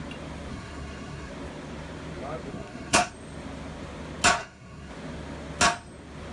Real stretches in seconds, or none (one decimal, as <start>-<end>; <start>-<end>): 0.0-0.5; 1.3-2.5; 3.1-4.4; 4.9-6.3